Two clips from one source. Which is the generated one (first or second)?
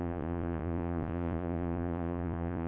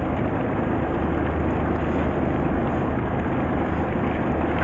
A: first